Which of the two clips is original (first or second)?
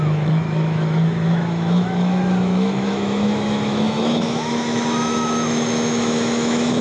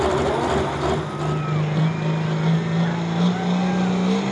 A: second